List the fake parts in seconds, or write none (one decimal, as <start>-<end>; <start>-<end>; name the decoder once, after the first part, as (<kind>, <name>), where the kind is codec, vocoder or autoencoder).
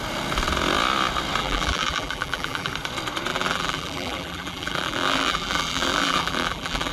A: 1.4-2.7 (vocoder, BigVGAN v2); 3.3-6.9